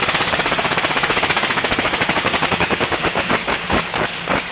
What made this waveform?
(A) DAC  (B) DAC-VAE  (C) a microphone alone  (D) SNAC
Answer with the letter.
A